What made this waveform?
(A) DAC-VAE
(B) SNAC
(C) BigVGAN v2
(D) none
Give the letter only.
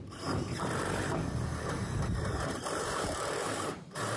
C